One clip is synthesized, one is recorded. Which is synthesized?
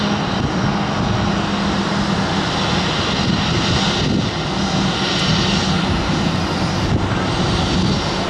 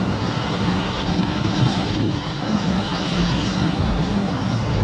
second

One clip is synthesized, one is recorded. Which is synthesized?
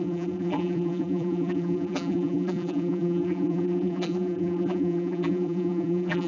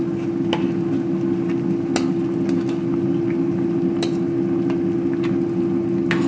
first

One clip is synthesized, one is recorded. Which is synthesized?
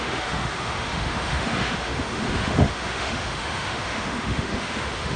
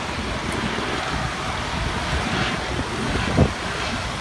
first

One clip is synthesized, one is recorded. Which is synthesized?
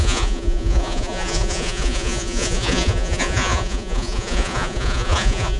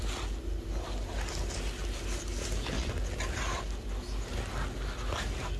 first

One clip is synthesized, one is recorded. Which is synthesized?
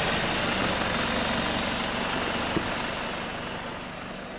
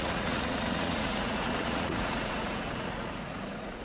second